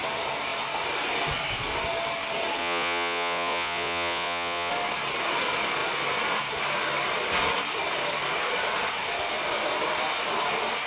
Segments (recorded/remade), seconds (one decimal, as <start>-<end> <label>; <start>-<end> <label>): 0.0-2.6 recorded; 2.6-4.7 remade; 4.7-10.9 recorded